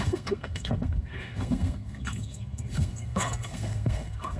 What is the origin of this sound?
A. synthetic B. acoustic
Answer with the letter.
A